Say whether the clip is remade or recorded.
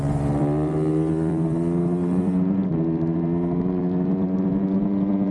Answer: remade